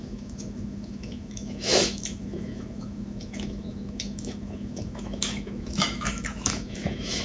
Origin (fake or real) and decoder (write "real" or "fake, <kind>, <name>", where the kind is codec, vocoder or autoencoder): fake, autoencoder, DAC-VAE